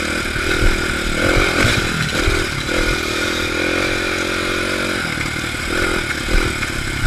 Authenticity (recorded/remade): recorded